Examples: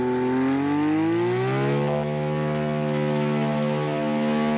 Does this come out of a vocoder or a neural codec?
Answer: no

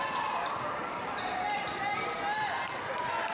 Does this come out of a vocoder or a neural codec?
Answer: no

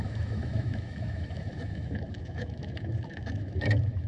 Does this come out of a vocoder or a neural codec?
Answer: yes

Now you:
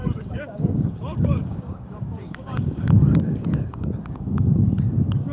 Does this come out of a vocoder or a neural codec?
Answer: yes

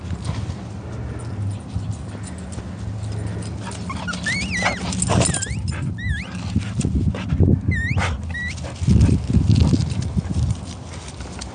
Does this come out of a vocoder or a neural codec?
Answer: no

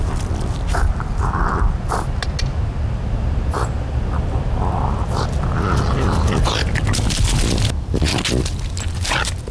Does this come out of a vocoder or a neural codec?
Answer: no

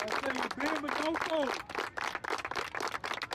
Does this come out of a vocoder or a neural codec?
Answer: no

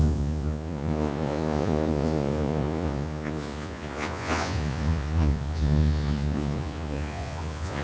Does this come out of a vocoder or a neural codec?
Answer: yes